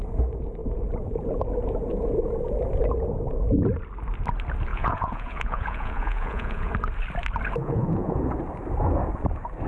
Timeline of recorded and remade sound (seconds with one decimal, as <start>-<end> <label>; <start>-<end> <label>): 0.0-4.7 recorded; 4.7-6.7 remade; 6.7-7.6 recorded; 7.6-8.2 remade; 8.2-9.7 recorded

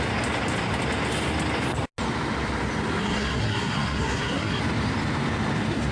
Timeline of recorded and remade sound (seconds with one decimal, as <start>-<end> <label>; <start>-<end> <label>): 0.0-3.0 recorded; 3.0-4.6 remade; 4.6-5.9 recorded

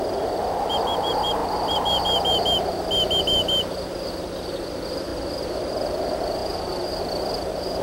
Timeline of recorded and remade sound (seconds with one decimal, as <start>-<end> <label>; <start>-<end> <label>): 0.0-7.8 recorded